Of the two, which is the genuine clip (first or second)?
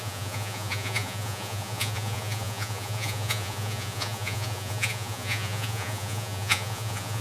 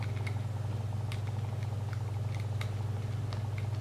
second